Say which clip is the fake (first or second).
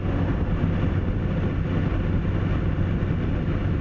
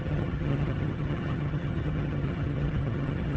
second